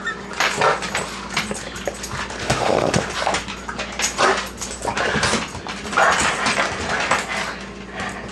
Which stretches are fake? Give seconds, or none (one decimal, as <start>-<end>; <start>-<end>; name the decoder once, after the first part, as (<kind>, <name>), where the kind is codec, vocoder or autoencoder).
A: 2.4-3.1 (autoencoder, DAC-VAE)